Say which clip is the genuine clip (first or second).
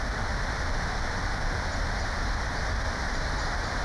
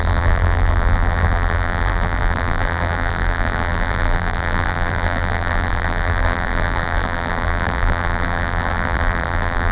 first